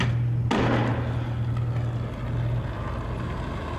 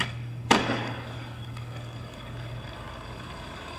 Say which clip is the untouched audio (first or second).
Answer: first